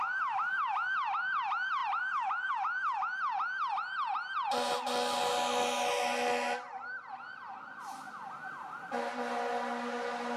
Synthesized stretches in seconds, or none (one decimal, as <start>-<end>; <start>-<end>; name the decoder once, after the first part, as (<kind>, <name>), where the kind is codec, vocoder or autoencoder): 1.8-2.5 (vocoder, BigVGAN v2)